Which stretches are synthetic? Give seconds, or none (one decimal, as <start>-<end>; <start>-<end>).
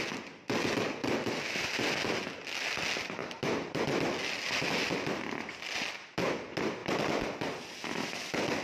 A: 1.0-1.7; 3.2-3.8